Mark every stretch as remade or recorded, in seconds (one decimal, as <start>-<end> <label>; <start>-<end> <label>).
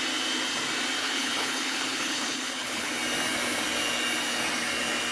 0.0-1.0 recorded; 1.0-2.9 remade; 2.9-5.1 recorded